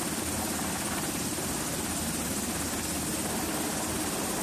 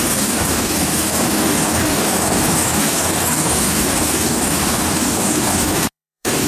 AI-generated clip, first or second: second